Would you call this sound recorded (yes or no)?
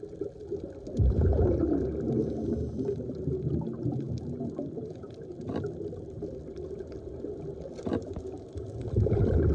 yes